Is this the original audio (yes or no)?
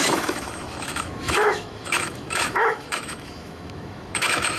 no